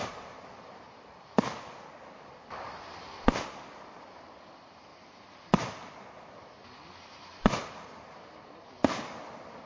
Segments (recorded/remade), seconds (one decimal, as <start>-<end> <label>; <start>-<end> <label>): 0.0-4.9 recorded; 4.9-5.9 remade; 5.9-9.7 recorded